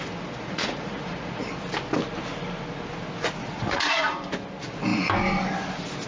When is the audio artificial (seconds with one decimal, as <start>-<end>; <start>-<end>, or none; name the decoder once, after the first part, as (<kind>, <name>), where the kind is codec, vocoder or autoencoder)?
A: 0.4-1.5 (vocoder, Vocos); 3.4-4.3